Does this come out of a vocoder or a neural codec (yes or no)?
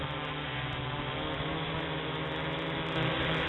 no